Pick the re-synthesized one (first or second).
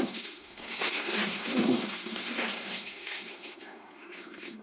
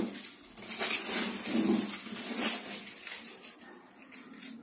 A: first